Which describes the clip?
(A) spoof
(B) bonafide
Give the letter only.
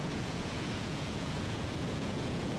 A